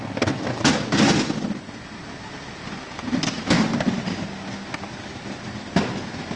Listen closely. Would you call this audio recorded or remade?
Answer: recorded